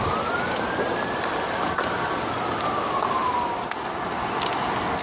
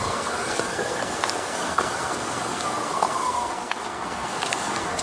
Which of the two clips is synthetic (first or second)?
second